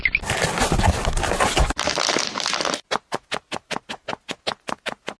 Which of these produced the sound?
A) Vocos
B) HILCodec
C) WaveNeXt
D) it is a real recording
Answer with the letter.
D